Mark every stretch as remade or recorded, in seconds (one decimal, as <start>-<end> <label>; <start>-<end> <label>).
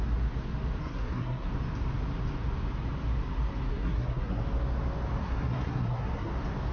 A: 0.0-0.8 recorded; 0.8-1.5 remade; 1.5-3.7 recorded; 3.7-4.4 remade; 4.4-5.2 recorded; 5.2-6.3 remade; 6.3-6.7 recorded